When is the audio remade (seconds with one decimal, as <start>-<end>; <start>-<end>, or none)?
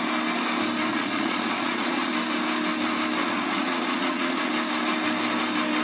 0.9-2.1; 3.2-4.5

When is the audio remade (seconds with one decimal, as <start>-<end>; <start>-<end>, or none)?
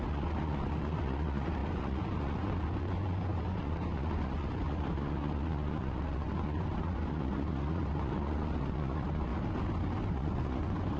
0.0-9.3; 10.1-11.0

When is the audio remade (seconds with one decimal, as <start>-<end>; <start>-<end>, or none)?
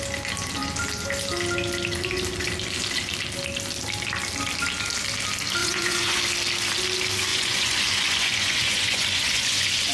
5.6-6.2; 7.3-9.9